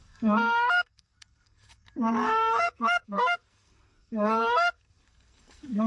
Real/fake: fake